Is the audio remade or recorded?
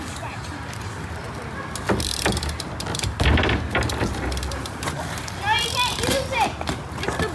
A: recorded